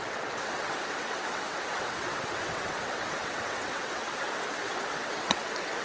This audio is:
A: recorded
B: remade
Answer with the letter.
B